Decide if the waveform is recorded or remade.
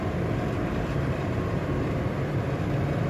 remade